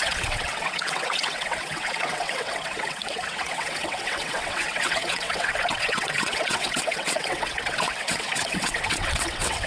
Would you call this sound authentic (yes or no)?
no